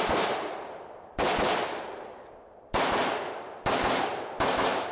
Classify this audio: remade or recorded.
recorded